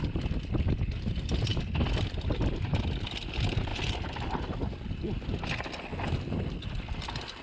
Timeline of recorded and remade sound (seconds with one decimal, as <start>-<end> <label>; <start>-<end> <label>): 0.0-7.4 recorded